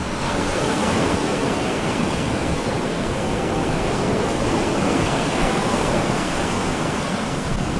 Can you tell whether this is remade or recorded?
remade